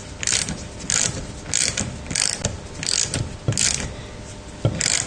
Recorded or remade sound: recorded